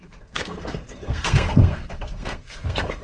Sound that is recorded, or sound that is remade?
remade